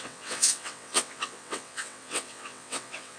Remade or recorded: remade